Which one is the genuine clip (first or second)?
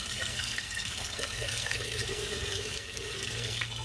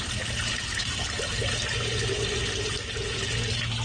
second